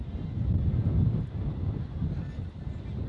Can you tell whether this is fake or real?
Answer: real